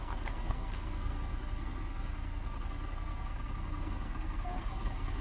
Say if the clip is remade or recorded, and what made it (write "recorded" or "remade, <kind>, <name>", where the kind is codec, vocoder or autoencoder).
remade, codec, SNAC